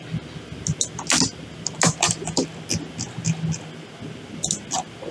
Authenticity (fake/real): real